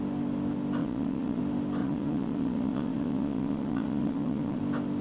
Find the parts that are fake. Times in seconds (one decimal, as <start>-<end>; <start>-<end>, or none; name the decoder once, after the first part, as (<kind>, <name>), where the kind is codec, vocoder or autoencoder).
0.8-1.4 (vocoder, Vocos); 1.8-4.6